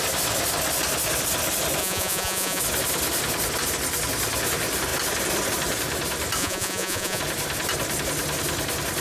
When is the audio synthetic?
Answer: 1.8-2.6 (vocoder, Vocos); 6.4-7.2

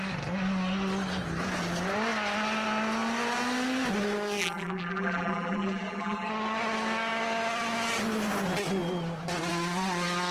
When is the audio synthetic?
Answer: 4.4-6.3 (vocoder, BigVGAN v2)

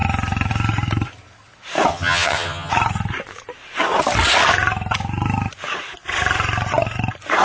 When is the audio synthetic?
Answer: 1.9-2.7 (vocoder, HiFi-GAN)

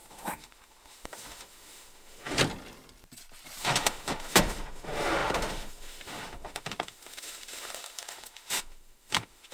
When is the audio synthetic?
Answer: 0.0-2.4 (autoencoder, DAC-VAE); 3.6-9.5

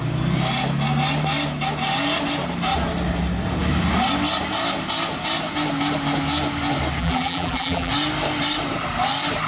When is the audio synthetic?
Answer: 7.0-7.9 (vocoder, BigVGAN v2)

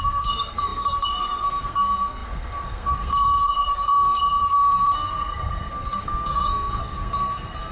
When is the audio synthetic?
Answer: 0.0-7.7 (codec, SNAC)

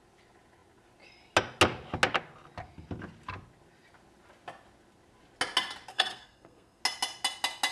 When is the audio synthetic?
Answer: 5.9-6.8 (codec, SNAC)